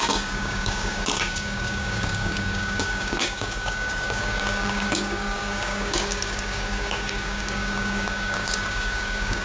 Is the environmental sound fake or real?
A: fake